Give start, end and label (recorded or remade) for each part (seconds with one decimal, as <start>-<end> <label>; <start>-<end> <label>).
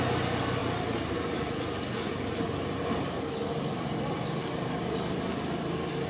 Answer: 0.0-6.1 recorded